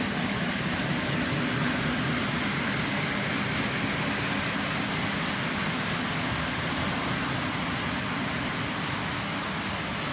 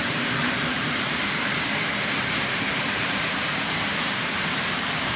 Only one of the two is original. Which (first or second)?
first